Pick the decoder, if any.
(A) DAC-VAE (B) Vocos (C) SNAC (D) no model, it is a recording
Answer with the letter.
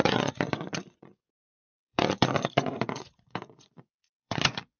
B